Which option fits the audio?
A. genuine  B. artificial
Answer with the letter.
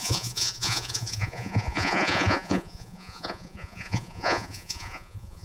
B